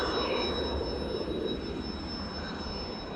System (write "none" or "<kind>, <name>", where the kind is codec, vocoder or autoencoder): none